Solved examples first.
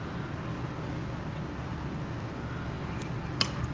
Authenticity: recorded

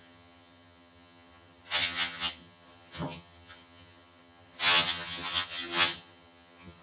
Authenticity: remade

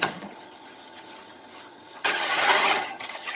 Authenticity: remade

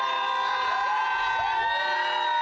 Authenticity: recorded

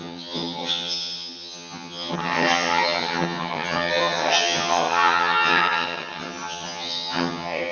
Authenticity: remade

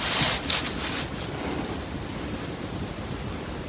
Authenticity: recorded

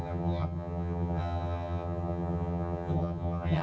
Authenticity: remade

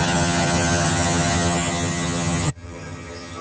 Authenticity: remade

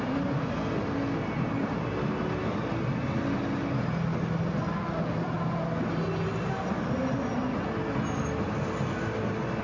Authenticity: recorded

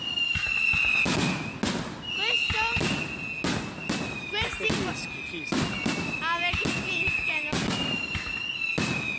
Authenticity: recorded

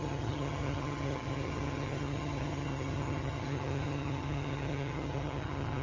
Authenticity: remade